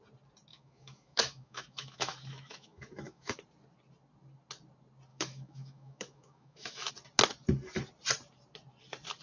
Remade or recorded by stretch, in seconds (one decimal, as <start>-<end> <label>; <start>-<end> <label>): 0.0-0.5 recorded; 0.5-3.4 remade; 3.4-5.1 recorded; 5.1-6.9 remade; 6.9-9.2 recorded